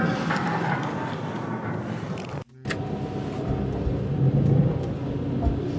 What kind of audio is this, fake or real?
real